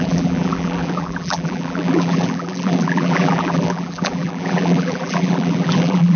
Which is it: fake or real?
fake